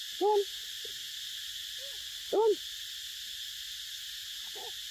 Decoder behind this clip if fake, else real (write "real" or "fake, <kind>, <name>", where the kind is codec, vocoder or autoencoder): real